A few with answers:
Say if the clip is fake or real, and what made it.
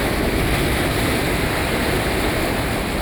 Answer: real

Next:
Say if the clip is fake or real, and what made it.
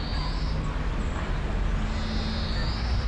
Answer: real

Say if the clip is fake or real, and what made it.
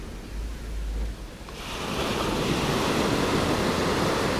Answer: real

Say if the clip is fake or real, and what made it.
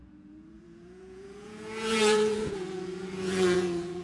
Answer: fake, vocoder, Vocos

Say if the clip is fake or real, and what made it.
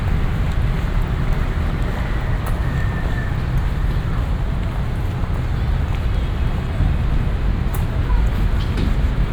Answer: real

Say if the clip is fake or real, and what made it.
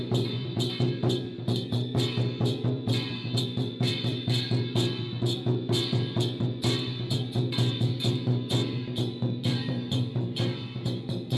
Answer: fake, vocoder, Vocos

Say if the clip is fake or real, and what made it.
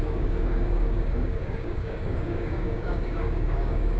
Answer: fake, codec, DAC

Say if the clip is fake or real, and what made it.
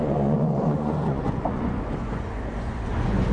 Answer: fake, vocoder, Vocos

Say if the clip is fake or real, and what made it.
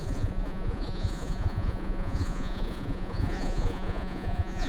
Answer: fake, vocoder, Vocos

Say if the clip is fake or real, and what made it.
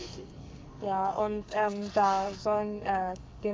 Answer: fake, codec, SNAC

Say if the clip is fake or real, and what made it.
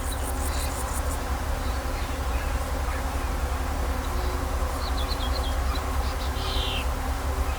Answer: real